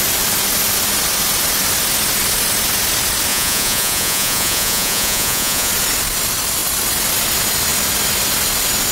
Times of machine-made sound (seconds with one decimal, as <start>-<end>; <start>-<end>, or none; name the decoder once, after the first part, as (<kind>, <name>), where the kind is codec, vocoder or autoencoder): 3.3-5.7 (vocoder, Vocos)